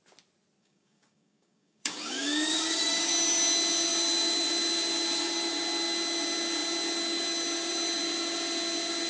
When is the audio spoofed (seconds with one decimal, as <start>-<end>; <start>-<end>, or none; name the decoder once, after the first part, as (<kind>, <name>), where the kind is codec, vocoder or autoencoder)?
0.6-3.1 (codec, DAC)

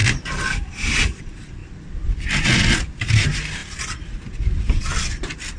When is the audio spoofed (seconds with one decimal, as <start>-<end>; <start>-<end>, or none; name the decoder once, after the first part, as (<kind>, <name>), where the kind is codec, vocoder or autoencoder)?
none

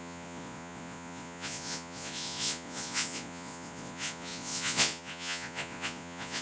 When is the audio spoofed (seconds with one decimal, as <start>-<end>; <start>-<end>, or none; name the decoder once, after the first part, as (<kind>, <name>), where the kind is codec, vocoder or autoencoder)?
0.0-6.4 (vocoder, Vocos)

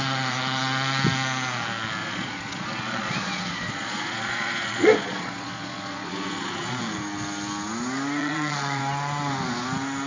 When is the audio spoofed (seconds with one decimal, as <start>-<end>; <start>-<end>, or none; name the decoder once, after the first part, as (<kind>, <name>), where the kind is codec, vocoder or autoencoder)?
2.0-6.8 (vocoder, Vocos); 8.2-8.8

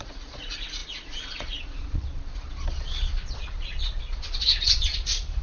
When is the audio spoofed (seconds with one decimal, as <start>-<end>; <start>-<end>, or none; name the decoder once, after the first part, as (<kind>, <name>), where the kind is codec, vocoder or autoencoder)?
0.0-5.4 (vocoder, Vocos)